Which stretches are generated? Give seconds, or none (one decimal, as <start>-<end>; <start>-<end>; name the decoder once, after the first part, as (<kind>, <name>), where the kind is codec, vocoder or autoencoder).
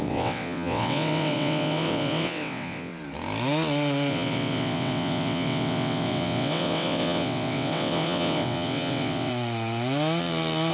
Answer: 0.0-2.9 (vocoder, WaveNeXt); 4.1-9.3